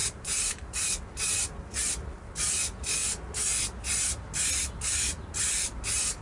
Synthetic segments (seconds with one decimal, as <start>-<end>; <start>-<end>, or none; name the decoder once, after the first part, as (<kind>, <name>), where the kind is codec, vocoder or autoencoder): 0.0-0.9 (vocoder, BigVGAN v2)